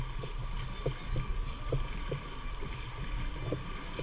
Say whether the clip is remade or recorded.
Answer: recorded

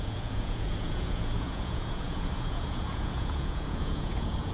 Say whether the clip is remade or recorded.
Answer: remade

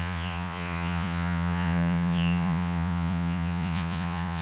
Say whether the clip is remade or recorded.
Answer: remade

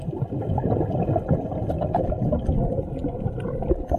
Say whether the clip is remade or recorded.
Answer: recorded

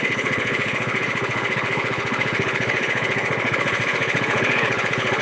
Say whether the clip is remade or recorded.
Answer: remade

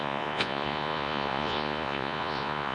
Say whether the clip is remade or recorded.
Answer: remade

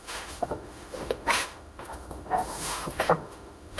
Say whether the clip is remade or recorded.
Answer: remade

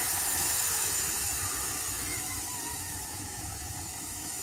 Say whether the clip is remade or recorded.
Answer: remade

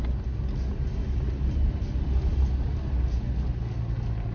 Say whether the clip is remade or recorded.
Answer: recorded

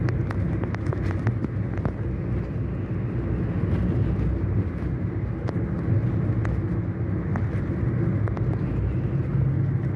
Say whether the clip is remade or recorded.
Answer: recorded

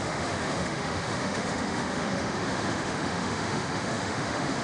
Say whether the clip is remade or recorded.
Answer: remade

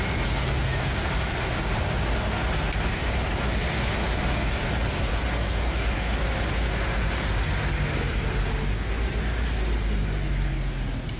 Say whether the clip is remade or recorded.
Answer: recorded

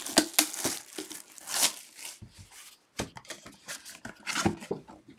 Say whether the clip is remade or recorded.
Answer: recorded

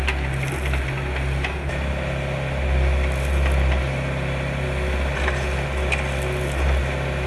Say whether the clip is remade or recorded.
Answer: recorded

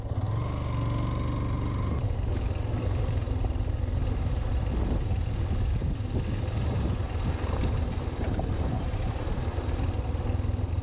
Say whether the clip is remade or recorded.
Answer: recorded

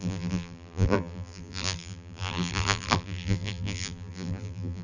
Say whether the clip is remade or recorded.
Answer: remade